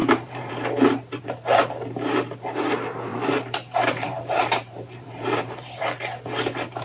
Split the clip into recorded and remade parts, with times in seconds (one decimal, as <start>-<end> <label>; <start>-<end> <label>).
0.0-0.5 remade; 0.5-3.1 recorded; 3.1-5.8 remade; 5.8-6.8 recorded

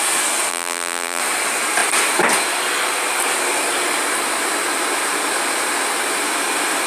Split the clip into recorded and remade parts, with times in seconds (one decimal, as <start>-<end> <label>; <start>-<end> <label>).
0.0-0.5 recorded; 0.5-1.2 remade; 1.2-6.9 recorded

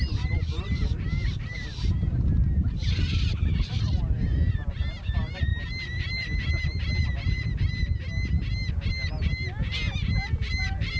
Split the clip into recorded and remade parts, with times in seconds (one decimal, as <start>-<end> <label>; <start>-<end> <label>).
0.0-7.8 remade; 7.8-10.5 recorded; 10.5-11.0 remade

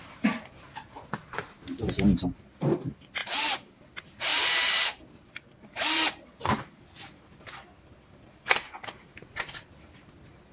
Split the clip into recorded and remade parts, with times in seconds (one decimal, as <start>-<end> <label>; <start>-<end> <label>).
0.0-3.2 remade; 3.2-3.7 recorded; 3.7-10.5 remade